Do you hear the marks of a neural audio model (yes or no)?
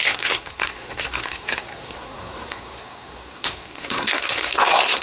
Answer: yes